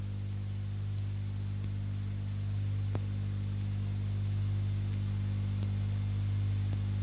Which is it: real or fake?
real